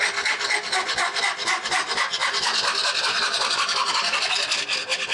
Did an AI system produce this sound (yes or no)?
no